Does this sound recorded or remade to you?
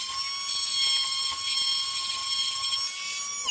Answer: recorded